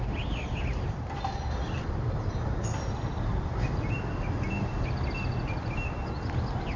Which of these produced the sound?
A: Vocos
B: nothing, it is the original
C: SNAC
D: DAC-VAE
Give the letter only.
B